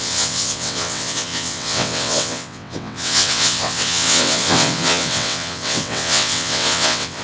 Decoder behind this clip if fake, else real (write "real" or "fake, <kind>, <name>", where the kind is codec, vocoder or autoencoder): fake, vocoder, WaveNeXt